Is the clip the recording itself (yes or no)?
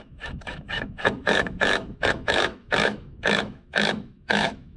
no